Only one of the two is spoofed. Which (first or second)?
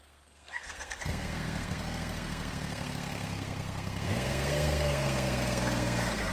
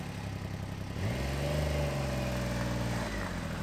first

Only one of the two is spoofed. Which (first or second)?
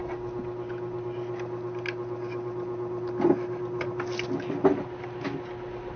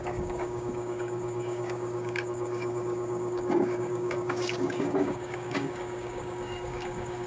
second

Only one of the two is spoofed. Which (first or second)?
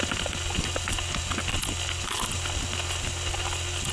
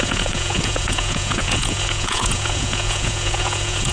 second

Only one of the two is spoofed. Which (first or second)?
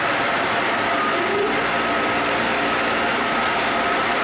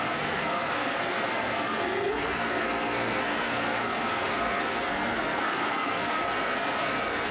second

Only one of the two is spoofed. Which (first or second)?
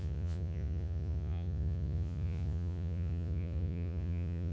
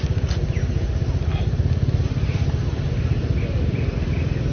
first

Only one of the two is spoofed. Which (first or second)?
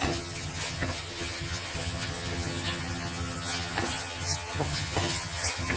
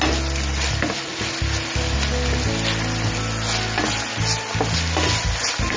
first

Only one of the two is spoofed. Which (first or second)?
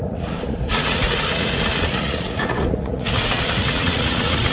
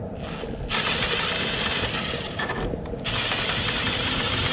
first